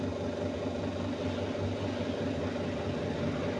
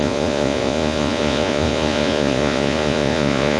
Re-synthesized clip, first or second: second